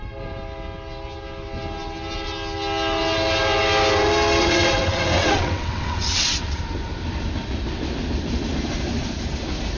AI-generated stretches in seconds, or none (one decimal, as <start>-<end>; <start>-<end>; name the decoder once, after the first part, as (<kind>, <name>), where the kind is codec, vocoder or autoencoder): 4.4-6.6 (vocoder, WaveNeXt)